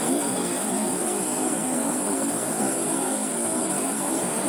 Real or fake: fake